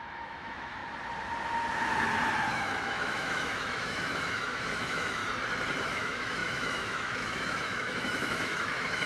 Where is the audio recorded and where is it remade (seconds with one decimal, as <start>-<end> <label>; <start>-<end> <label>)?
0.0-0.8 remade; 0.8-2.5 recorded; 2.5-5.2 remade; 5.2-5.8 recorded; 5.8-9.1 remade